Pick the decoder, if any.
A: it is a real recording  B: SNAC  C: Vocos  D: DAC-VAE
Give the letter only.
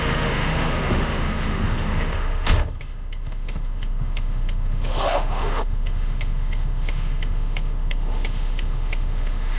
D